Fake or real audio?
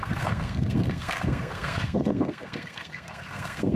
fake